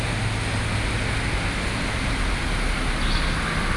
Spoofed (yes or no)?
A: no